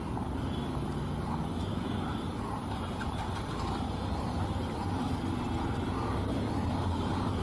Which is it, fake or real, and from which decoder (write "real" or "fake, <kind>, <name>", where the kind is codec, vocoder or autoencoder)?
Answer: real